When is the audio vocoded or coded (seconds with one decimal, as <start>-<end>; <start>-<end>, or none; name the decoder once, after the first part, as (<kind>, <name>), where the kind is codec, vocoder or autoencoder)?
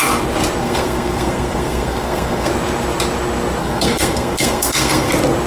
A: 0.6-2.5 (codec, SNAC); 3.6-5.1